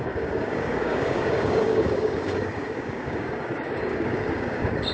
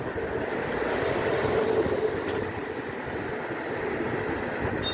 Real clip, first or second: second